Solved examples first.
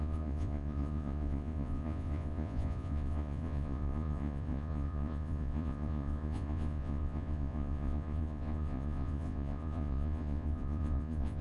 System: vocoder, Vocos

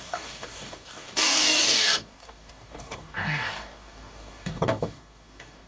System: codec, DAC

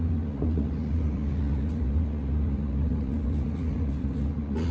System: vocoder, Vocos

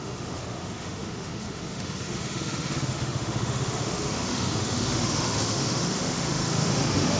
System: autoencoder, DAC-VAE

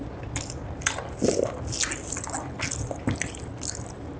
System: none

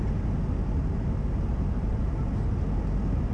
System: none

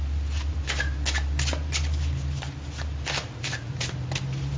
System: none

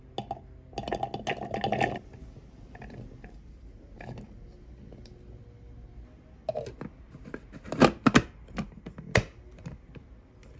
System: none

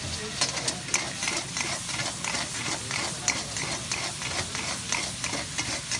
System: none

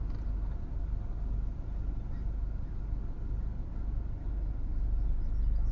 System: none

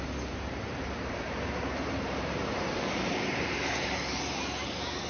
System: vocoder, BigVGAN v2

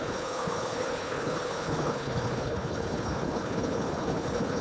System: codec, HILCodec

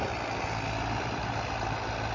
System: none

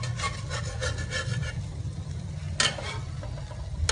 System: none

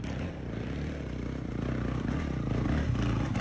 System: none